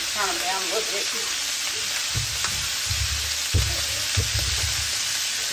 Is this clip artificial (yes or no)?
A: no